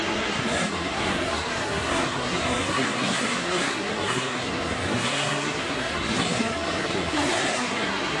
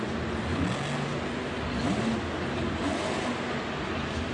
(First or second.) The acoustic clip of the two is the second